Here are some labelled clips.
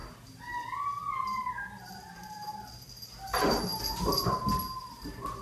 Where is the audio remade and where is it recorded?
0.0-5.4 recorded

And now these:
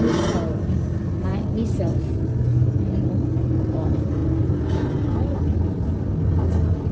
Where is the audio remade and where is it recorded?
0.0-6.9 recorded

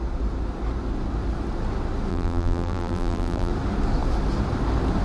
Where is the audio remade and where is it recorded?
0.0-2.1 recorded; 2.1-3.5 remade; 3.5-5.0 recorded

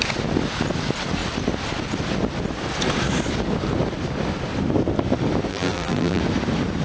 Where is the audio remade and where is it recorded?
0.0-5.5 recorded; 5.5-6.2 remade; 6.2-6.8 recorded

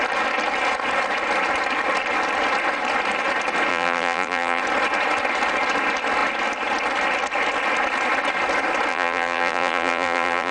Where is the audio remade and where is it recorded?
0.0-3.7 recorded; 3.7-4.6 remade; 4.6-8.9 recorded; 8.9-10.5 remade

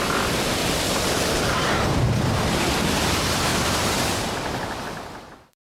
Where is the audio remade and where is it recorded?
0.0-3.5 remade; 3.5-4.2 recorded; 4.2-5.6 remade